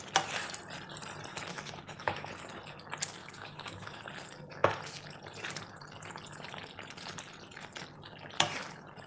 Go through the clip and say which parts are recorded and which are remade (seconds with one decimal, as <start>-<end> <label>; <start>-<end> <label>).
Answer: 0.0-1.3 recorded; 1.3-2.3 remade; 2.3-3.2 recorded; 3.2-4.0 remade; 4.0-9.1 recorded